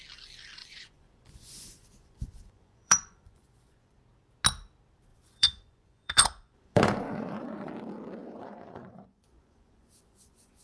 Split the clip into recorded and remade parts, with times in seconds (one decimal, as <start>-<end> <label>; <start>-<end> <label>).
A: 0.0-0.6 recorded; 0.6-4.0 remade; 4.0-5.1 recorded; 5.1-7.7 remade; 7.7-8.2 recorded; 8.2-10.6 remade